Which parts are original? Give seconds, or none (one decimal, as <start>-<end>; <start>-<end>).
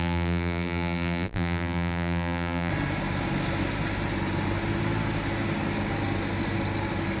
2.7-7.2